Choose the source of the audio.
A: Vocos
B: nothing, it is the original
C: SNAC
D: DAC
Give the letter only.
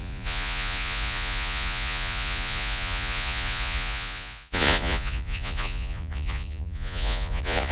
A